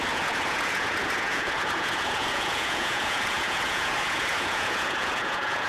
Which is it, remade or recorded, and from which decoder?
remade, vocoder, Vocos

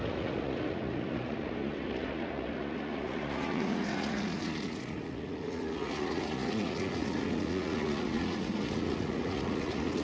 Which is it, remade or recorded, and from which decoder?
remade, vocoder, Vocos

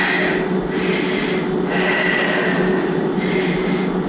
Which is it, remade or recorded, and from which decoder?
recorded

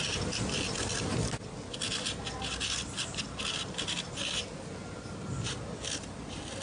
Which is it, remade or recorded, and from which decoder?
recorded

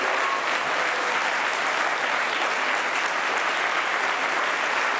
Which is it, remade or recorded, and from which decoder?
recorded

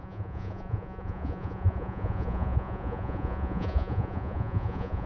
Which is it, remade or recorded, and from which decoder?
remade, vocoder, Vocos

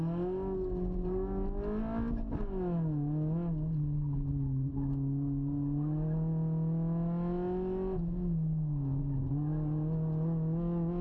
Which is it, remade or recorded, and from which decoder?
recorded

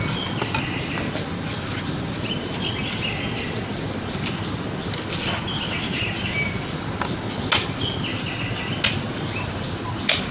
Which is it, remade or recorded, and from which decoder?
recorded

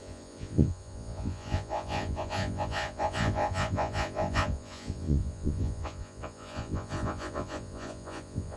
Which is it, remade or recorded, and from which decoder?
remade, vocoder, Vocos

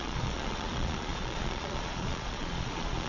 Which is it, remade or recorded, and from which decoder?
remade, vocoder, Vocos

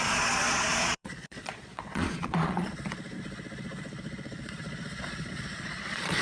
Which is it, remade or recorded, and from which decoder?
remade, vocoder, Vocos